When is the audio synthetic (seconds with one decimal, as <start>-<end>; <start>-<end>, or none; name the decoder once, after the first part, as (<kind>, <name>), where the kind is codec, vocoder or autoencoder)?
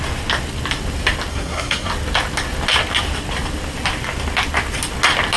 1.3-1.9 (codec, SNAC)